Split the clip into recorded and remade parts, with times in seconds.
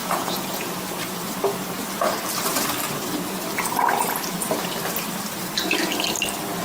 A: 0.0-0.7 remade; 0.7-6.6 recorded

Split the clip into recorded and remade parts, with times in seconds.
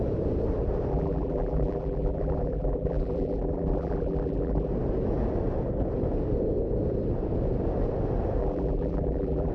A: 0.0-0.9 recorded; 0.9-4.7 remade; 4.7-8.4 recorded; 8.4-9.5 remade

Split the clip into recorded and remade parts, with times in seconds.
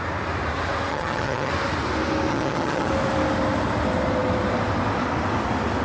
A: 0.0-0.9 recorded; 0.9-1.5 remade; 1.5-2.3 recorded; 2.3-2.9 remade; 2.9-5.8 recorded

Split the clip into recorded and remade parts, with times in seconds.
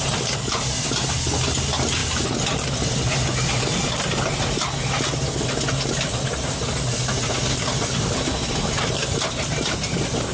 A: 0.0-10.3 recorded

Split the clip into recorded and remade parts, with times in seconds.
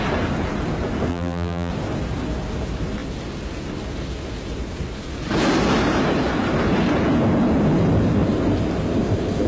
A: 0.0-1.1 recorded; 1.1-1.7 remade; 1.7-9.5 recorded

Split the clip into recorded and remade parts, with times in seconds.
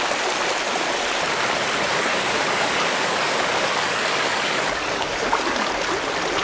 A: 0.0-1.9 recorded; 1.9-5.7 remade; 5.7-6.4 recorded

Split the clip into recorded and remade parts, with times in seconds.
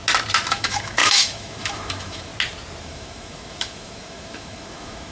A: 0.0-0.5 recorded; 0.5-2.3 remade; 2.3-2.8 recorded; 2.8-5.1 remade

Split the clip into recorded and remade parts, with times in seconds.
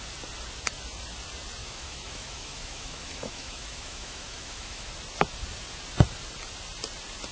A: 0.0-1.6 recorded; 1.6-4.9 remade; 4.9-7.3 recorded